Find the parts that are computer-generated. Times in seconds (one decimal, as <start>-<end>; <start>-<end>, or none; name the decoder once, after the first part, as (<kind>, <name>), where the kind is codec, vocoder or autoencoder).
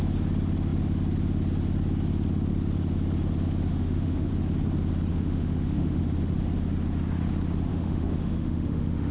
3.7-4.3 (autoencoder, DAC-VAE); 5.1-6.0; 7.7-9.1